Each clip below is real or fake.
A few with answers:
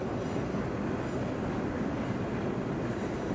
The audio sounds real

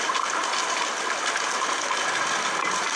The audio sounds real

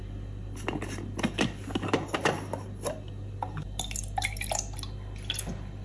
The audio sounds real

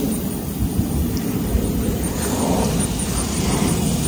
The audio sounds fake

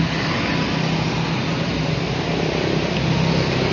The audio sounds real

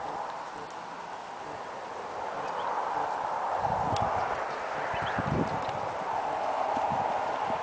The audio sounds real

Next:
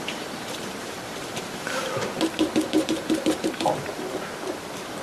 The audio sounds fake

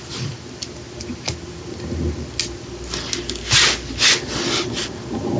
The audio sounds real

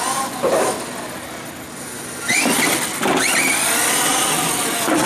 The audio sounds real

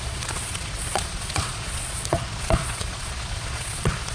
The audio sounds fake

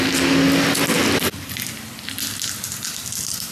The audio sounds real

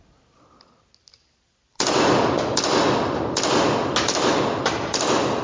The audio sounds real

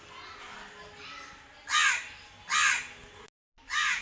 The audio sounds real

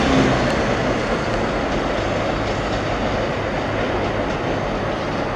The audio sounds real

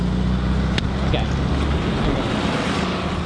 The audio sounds real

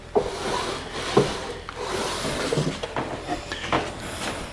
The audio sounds real